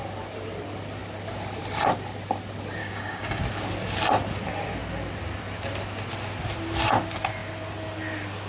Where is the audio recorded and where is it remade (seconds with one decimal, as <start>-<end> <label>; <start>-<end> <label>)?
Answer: 0.0-2.8 recorded; 2.8-3.4 remade; 3.4-8.5 recorded